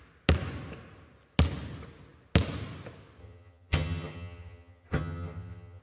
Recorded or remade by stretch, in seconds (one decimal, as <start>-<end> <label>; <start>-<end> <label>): 0.0-3.2 recorded; 3.2-5.8 remade